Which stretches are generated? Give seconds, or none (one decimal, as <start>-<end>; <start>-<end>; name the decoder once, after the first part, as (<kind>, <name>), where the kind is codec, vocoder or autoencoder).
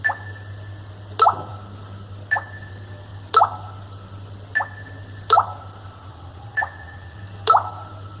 6.0-7.2 (vocoder, Vocos)